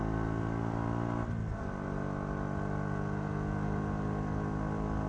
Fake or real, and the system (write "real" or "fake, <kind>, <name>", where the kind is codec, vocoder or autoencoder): real